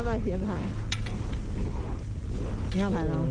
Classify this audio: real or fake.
real